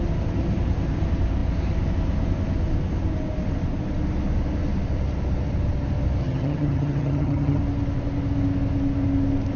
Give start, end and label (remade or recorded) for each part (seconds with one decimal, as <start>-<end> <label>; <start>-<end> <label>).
0.0-6.2 recorded; 6.2-7.6 remade; 7.6-9.6 recorded